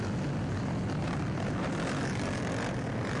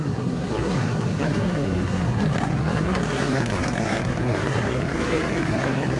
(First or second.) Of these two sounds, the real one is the first